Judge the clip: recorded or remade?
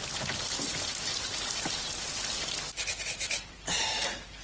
recorded